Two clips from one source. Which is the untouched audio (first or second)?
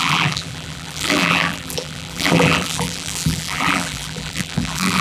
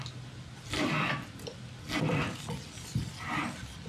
second